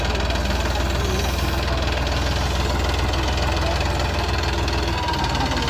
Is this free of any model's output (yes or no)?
yes